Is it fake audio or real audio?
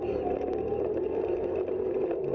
real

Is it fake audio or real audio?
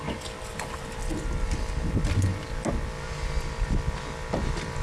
real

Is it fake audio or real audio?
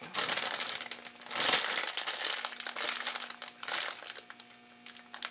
real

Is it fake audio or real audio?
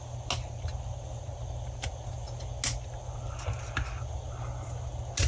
real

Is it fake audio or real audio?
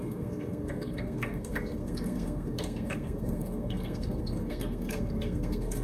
fake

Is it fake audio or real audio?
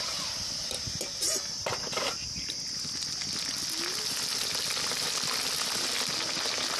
real